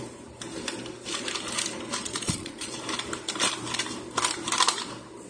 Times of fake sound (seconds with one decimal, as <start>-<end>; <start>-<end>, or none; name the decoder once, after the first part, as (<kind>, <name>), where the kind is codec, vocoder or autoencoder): 2.0-2.8 (vocoder, Vocos)